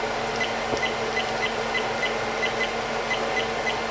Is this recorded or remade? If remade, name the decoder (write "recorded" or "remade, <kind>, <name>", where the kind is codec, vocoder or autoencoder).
recorded